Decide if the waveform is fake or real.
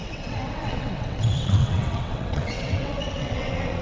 fake